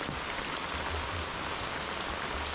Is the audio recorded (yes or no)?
yes